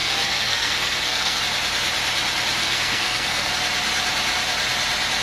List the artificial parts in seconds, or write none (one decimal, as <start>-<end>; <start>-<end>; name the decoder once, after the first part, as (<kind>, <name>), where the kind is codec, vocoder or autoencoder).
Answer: 0.0-1.4 (codec, SNAC); 2.6-3.5

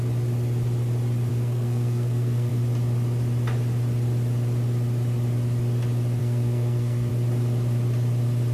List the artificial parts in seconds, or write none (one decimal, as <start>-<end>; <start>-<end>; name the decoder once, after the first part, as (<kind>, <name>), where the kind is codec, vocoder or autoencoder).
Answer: 1.3-2.5 (codec, SNAC); 6.2-7.1

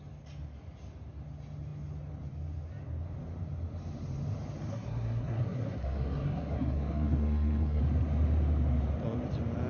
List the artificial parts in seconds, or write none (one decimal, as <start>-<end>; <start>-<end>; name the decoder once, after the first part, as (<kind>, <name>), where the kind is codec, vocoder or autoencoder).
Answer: 4.7-7.8 (codec, SNAC)